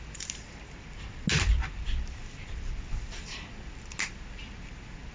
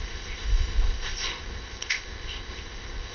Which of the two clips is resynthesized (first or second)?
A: second